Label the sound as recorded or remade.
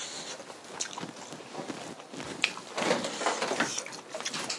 recorded